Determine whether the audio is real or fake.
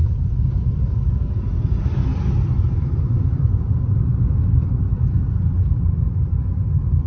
fake